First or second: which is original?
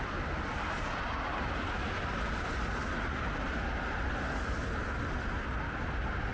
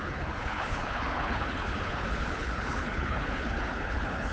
first